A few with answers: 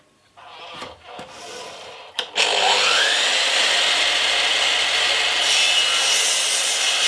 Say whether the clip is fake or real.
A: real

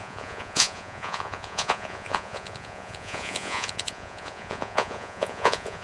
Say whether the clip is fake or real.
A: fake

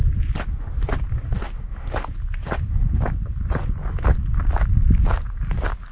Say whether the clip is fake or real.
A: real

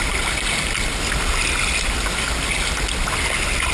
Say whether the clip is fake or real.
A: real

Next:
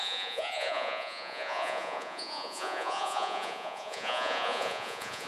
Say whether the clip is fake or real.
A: fake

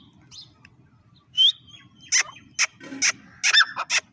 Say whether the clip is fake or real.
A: real